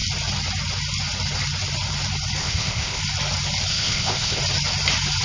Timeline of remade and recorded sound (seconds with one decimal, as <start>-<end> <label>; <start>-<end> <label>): 0.0-2.4 recorded; 2.4-3.0 remade; 3.0-3.7 recorded; 3.7-4.4 remade; 4.4-5.2 recorded